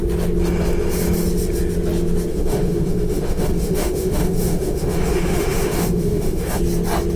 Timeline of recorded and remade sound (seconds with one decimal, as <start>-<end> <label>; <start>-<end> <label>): 0.0-2.3 recorded; 2.3-6.6 remade; 6.6-7.2 recorded